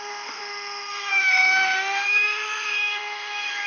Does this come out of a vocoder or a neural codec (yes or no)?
yes